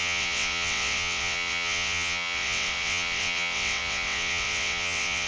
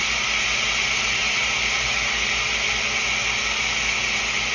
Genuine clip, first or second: second